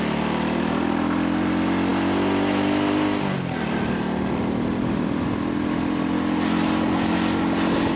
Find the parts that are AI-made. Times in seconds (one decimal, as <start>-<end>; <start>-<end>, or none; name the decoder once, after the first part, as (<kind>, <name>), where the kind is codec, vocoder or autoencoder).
none